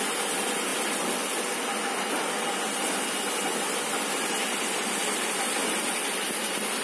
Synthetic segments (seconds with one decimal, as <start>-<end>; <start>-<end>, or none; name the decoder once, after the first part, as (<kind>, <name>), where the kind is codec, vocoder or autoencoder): none